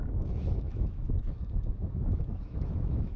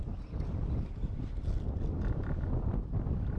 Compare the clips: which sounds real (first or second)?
second